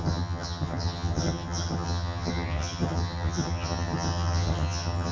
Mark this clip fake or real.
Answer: fake